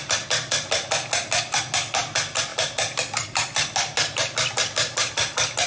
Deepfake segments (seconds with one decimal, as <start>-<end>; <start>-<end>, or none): 2.5-3.0